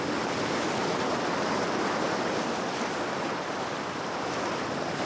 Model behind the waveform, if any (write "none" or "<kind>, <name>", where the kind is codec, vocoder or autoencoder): none